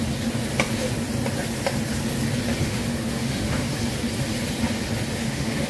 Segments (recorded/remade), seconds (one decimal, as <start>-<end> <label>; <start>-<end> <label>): 0.0-2.6 recorded; 2.6-3.8 remade; 3.8-5.1 recorded; 5.1-5.7 remade